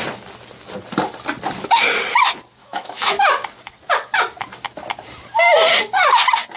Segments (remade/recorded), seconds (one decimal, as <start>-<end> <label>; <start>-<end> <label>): 0.0-2.6 recorded; 2.6-3.3 remade; 3.3-6.6 recorded